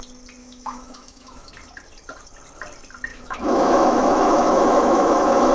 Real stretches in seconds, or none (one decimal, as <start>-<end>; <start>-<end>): 0.0-0.4; 1.5-3.1

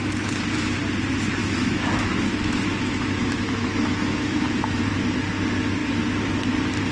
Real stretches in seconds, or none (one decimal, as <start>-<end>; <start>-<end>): 0.0-1.4; 4.8-6.9

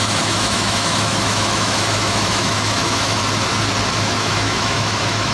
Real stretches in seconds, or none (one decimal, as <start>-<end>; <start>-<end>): 3.2-3.9

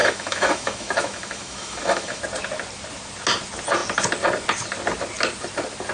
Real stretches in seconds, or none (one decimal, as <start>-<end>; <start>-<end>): 2.2-5.9

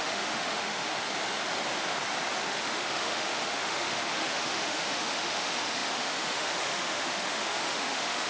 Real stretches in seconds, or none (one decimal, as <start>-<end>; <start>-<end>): 0.9-2.4

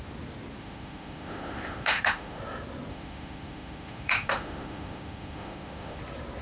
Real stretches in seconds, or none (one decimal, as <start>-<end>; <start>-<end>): 0.0-0.6; 2.4-2.9; 6.0-6.4

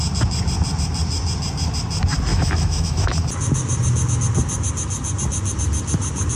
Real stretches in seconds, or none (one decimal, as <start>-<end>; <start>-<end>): 0.0-2.3; 3.1-6.4